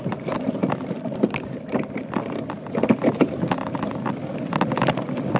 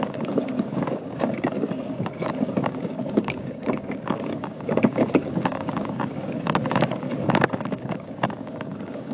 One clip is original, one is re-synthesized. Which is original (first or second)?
first